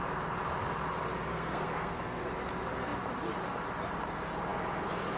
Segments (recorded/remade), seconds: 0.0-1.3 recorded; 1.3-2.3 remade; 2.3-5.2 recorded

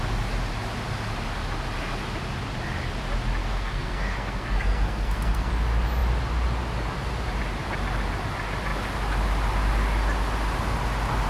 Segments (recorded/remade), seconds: 0.0-3.4 recorded; 3.4-5.5 remade; 5.5-11.3 recorded

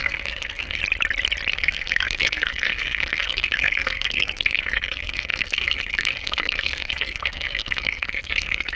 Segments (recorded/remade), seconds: 0.0-0.8 remade; 0.8-1.5 recorded; 1.5-8.8 remade

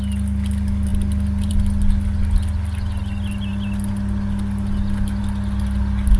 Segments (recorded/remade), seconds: 0.0-6.2 recorded